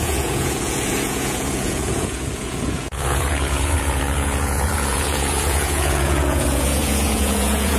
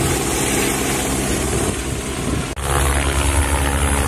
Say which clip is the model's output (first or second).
first